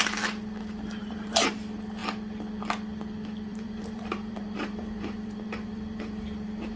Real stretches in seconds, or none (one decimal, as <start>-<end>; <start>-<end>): 0.0-1.0; 1.5-3.5